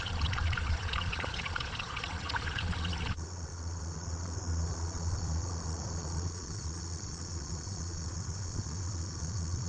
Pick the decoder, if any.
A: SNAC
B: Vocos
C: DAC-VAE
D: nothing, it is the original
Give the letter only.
B